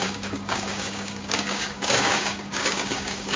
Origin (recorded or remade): remade